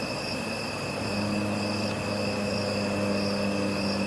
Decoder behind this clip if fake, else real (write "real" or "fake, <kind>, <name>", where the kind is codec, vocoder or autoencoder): real